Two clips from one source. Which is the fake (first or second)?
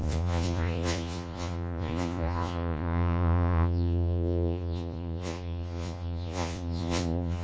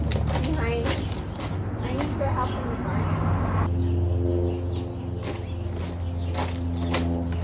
first